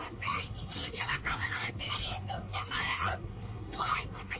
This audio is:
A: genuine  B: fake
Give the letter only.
B